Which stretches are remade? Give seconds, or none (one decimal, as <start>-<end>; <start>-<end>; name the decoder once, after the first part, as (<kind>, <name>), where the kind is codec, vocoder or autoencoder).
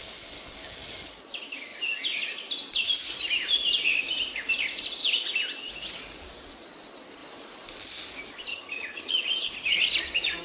8.5-9.2 (vocoder, HiFi-GAN)